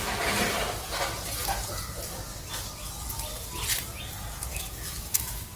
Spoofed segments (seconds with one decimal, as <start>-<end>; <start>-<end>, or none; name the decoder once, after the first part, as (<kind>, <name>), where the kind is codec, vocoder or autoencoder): 4.5-5.6 (autoencoder, DAC-VAE)